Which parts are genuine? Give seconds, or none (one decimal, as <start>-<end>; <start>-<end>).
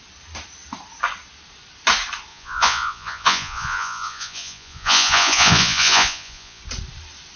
0.0-2.3; 6.6-7.4